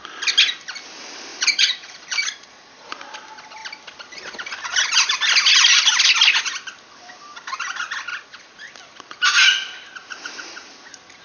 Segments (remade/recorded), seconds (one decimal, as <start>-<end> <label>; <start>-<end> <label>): 0.0-1.3 recorded; 1.3-2.9 remade; 2.9-8.1 recorded; 8.1-8.7 remade; 8.7-10.0 recorded; 10.0-10.7 remade; 10.7-11.2 recorded

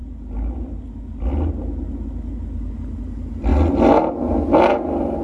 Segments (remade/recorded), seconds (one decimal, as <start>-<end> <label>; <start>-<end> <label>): 0.0-5.2 recorded